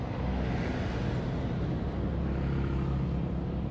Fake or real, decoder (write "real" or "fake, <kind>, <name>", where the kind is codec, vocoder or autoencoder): real